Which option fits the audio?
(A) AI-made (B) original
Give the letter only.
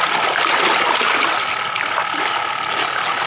B